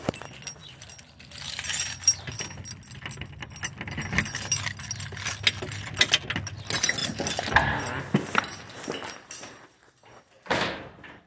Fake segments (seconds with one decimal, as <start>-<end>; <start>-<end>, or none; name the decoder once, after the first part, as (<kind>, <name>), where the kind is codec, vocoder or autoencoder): none